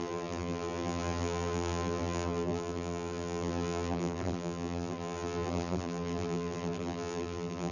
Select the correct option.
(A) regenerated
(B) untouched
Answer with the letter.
A